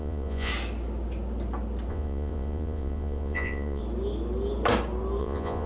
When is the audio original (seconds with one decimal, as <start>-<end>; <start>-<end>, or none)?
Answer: 0.5-1.9; 3.8-5.2

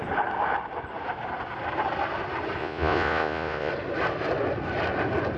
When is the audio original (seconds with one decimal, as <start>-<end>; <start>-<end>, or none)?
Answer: 0.0-2.6; 3.7-5.4

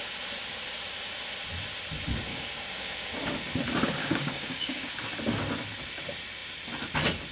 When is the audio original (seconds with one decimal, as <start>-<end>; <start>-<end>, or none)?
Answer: 0.0-2.3; 3.1-4.0; 4.9-7.3

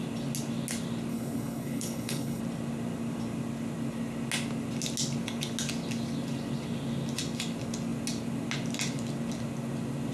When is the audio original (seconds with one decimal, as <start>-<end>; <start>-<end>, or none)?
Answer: 0.0-1.1; 2.4-10.1

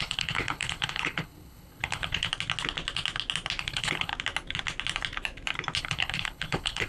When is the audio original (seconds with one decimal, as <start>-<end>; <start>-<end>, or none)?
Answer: 2.3-3.6; 4.1-5.8

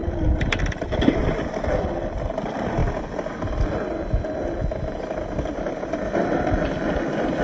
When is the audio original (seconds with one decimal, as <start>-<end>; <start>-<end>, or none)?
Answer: 0.0-0.6; 2.8-7.4

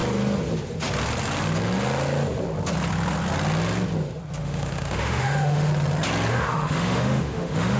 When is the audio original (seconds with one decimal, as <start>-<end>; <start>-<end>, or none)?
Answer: 0.0-4.4; 5.7-6.3